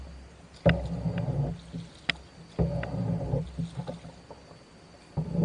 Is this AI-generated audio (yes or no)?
no